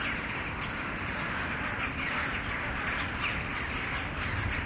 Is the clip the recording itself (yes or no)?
yes